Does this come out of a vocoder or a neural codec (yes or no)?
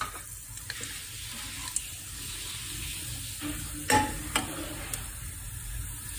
no